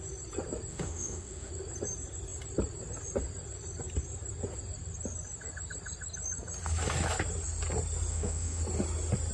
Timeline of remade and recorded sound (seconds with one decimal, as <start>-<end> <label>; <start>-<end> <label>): 0.0-0.7 recorded; 0.7-1.5 remade; 1.5-8.1 recorded; 8.1-8.6 remade; 8.6-9.3 recorded